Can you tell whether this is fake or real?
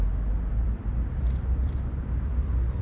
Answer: fake